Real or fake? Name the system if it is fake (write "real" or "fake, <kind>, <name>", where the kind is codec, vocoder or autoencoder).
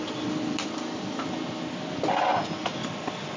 real